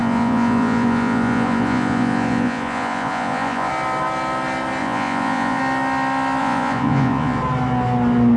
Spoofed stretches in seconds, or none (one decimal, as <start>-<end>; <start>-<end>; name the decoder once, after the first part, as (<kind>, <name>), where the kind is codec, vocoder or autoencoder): 0.0-3.7 (vocoder, Vocos); 4.8-5.6; 6.4-7.4